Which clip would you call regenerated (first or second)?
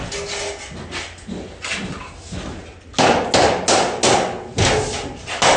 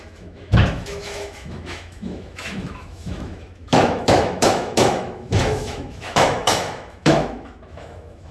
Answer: second